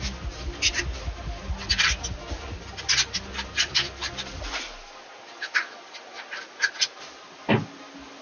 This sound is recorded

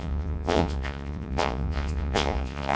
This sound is remade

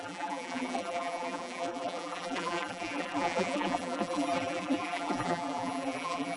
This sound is remade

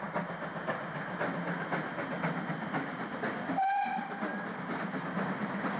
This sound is recorded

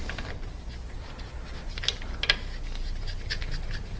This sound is recorded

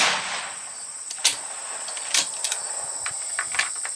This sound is recorded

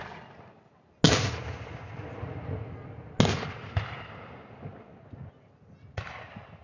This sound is recorded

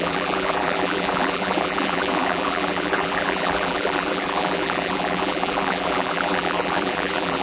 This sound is remade